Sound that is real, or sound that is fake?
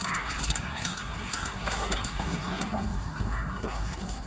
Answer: fake